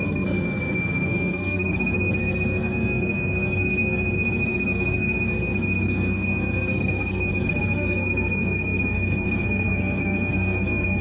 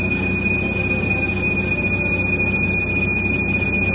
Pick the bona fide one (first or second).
second